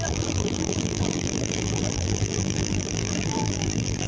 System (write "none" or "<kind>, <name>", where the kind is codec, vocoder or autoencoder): vocoder, BigVGAN v2